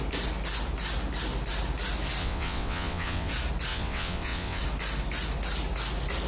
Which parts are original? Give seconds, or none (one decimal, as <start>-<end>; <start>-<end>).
0.0-2.2; 3.3-3.7; 4.6-6.3